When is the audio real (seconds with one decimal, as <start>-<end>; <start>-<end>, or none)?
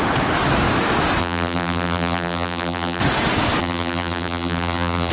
0.0-1.2; 3.0-3.6